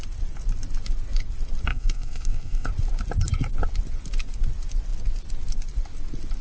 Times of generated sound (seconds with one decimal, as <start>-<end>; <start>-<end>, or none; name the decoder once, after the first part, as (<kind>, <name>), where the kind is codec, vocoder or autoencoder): 1.7-2.7 (codec, SNAC)